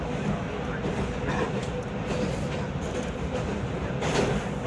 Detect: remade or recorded recorded